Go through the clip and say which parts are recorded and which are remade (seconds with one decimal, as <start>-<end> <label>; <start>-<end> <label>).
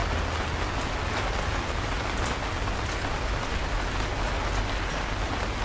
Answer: 0.0-5.6 recorded